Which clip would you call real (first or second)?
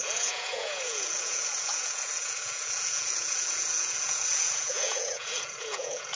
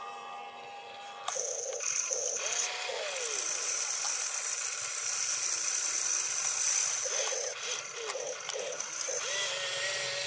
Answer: second